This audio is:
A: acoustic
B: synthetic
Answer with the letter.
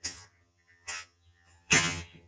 B